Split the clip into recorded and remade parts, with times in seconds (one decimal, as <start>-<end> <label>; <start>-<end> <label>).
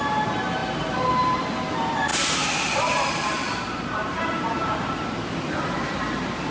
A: 0.0-6.5 remade